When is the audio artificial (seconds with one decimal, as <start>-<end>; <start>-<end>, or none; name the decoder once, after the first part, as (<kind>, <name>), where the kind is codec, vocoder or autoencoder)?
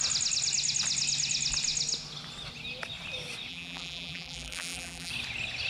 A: 3.5-5.1 (vocoder, BigVGAN v2)